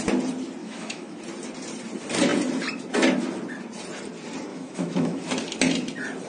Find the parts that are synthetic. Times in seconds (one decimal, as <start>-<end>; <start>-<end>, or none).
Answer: 0.6-1.2; 4.5-5.2